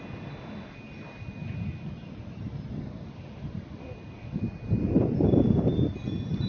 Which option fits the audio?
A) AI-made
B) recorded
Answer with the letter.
B